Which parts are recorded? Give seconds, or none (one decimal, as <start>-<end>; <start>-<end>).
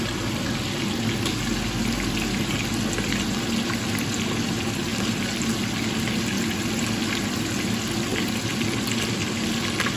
0.0-10.0